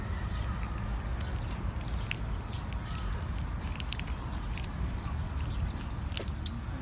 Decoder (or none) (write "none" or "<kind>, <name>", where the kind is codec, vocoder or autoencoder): none